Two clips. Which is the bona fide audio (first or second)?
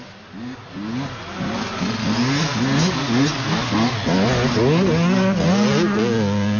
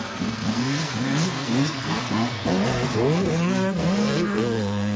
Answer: first